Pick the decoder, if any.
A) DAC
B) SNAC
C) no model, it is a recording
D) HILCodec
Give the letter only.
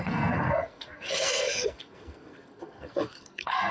B